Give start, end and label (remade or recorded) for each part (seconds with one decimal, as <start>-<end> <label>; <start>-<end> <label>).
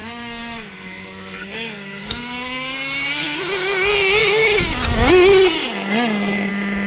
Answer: 0.0-3.4 remade; 3.4-6.9 recorded